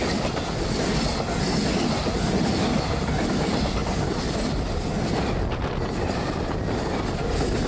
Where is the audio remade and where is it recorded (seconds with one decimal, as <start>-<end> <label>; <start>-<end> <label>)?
0.0-7.7 recorded